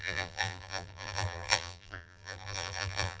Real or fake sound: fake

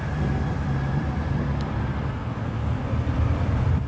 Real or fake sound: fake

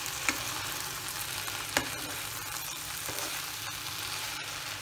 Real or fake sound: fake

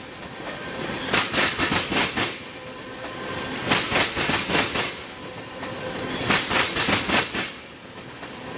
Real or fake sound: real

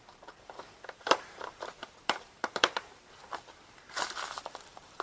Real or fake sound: fake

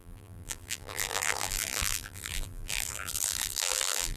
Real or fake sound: fake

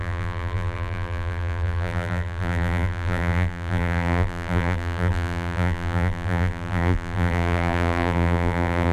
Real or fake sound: fake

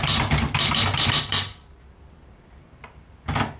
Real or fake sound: fake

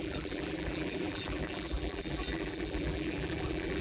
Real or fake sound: fake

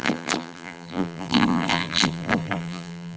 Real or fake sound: fake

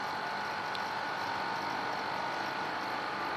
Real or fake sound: real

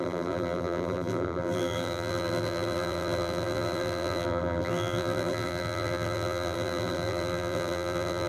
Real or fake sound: fake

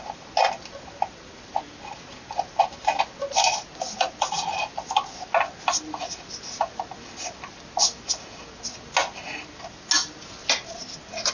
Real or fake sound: real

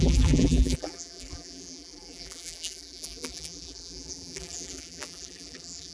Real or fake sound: fake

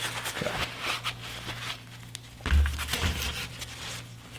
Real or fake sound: real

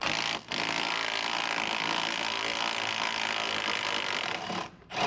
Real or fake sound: real